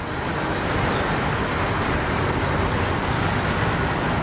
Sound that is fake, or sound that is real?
real